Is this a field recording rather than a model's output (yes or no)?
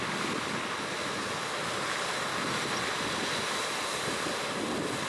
yes